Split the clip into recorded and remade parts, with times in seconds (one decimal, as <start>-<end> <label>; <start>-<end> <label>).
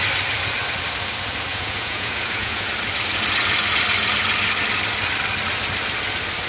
0.0-1.5 recorded; 1.5-2.7 remade; 2.7-6.5 recorded